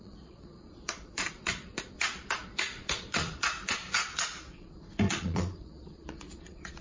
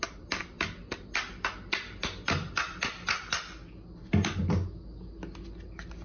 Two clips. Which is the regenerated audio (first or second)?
first